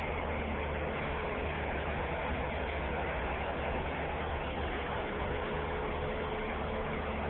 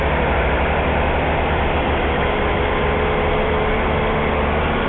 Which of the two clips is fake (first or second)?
first